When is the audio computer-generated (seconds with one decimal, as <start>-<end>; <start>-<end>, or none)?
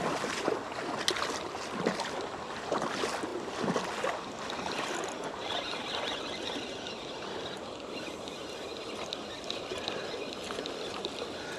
none